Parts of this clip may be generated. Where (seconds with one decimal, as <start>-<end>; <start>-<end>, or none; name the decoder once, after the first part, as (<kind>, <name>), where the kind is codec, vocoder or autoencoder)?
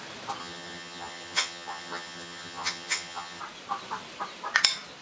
0.4-3.4 (vocoder, HiFi-GAN)